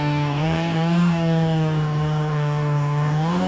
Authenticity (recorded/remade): remade